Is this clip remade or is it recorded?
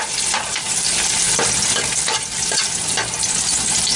recorded